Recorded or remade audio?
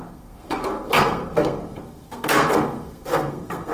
remade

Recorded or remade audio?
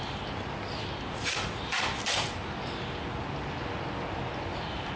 recorded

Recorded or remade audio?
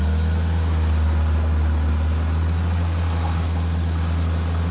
recorded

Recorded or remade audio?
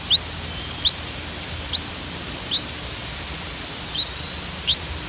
recorded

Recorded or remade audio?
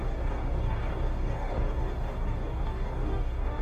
remade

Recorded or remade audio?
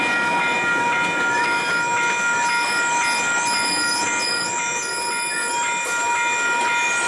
recorded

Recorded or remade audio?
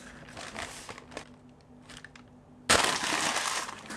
recorded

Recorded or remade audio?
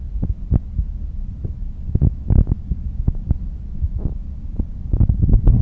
recorded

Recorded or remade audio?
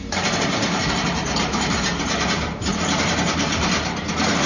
remade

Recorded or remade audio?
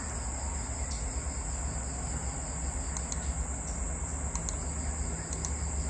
recorded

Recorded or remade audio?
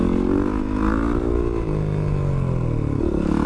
recorded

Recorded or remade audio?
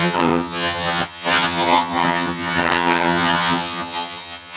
remade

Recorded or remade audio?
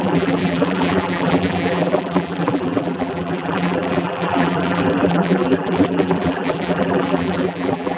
remade